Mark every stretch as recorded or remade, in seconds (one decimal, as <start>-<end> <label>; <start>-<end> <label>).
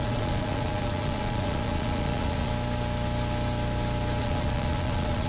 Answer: 0.0-2.5 remade; 2.5-4.2 recorded; 4.2-5.3 remade